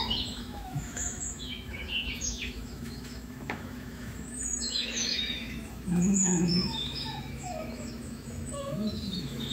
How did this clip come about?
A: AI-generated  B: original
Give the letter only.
A